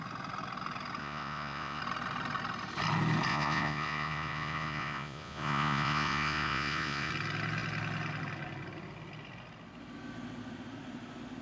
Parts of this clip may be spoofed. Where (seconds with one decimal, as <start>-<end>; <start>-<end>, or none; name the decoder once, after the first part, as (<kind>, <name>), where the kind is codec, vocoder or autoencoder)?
1.0-1.8 (vocoder, Vocos); 3.3-7.1